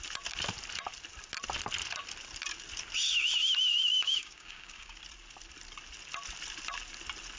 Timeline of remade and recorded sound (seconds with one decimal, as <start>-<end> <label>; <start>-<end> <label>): 0.0-3.7 recorded; 3.7-5.0 remade; 5.0-7.4 recorded